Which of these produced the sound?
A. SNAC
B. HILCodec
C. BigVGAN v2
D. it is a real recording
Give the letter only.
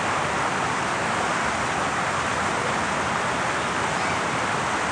D